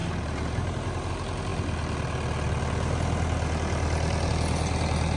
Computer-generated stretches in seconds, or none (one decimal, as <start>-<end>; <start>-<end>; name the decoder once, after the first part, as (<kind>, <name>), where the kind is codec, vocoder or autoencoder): 0.0-1.1 (vocoder, BigVGAN v2)